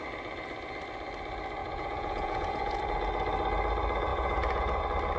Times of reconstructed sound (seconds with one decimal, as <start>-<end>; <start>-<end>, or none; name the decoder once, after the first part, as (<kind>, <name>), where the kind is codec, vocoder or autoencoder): 1.6-2.8 (vocoder, Vocos); 4.1-4.8

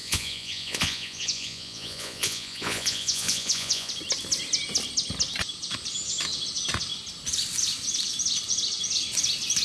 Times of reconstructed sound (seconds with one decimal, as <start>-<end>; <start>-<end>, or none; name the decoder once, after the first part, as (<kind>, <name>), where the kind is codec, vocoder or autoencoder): 0.0-3.9 (vocoder, Vocos)

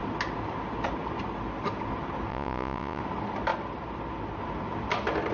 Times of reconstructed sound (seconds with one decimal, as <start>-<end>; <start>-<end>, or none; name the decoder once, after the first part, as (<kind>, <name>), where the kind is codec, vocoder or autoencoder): 2.3-3.0 (vocoder, Vocos)

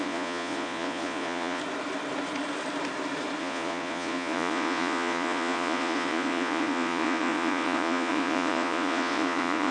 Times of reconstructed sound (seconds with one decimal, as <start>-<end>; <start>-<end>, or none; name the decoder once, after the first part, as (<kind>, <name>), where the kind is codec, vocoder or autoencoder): 0.0-1.6 (vocoder, Vocos); 3.4-9.7

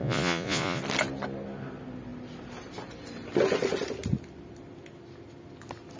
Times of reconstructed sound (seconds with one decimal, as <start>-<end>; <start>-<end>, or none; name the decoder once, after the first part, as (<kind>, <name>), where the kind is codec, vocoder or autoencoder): 0.0-0.8 (vocoder, Vocos)

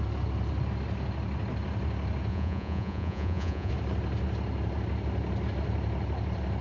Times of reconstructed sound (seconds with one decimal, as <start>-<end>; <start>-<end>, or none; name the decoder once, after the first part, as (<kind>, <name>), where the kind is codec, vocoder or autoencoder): 2.3-3.7 (vocoder, Vocos)

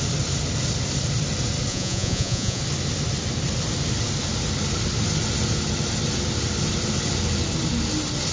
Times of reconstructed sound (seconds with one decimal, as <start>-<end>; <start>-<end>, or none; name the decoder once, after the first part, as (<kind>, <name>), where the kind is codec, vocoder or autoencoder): 1.7-2.6 (vocoder, Vocos)

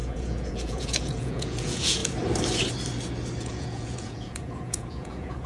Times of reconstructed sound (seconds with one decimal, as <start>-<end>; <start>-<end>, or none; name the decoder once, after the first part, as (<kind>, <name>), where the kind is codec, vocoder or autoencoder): 0.0-2.0 (vocoder, Vocos); 3.4-5.5